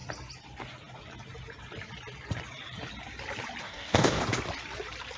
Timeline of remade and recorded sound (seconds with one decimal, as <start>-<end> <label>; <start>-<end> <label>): 0.0-3.6 recorded; 3.6-4.2 remade; 4.2-5.2 recorded

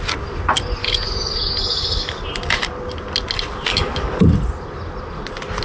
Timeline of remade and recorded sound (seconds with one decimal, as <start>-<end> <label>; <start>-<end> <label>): 0.0-0.8 recorded; 0.8-2.2 remade; 2.2-3.7 recorded; 3.7-4.2 remade; 4.2-5.6 recorded

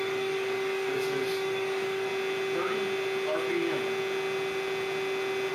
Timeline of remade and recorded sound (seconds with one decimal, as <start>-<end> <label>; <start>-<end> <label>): 0.0-2.1 remade; 2.1-5.5 recorded

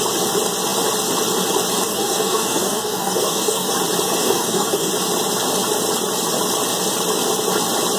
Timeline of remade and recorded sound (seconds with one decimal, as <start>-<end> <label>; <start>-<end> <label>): 0.0-1.9 recorded; 1.9-3.7 remade; 3.7-4.2 recorded; 4.2-4.9 remade; 4.9-8.0 recorded

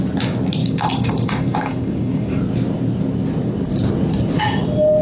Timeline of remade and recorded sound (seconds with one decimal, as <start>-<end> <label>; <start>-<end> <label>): 0.0-0.6 recorded; 0.6-2.4 remade; 2.4-5.0 recorded